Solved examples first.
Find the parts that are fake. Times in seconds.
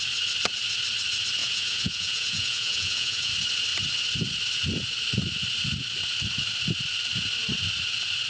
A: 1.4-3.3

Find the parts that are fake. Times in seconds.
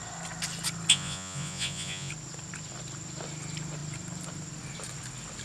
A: 0.9-2.1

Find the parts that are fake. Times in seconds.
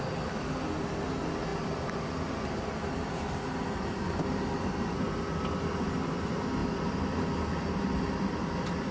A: none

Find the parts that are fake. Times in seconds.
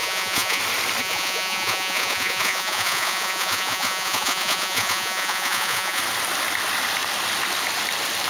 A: 0.0-0.6; 1.0-6.0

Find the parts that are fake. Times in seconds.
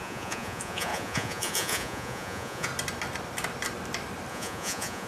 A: 0.0-2.7; 4.3-5.1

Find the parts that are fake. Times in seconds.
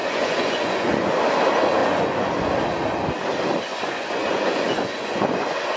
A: 0.0-1.1; 1.8-2.5; 3.7-5.8